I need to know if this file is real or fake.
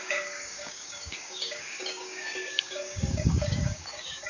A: fake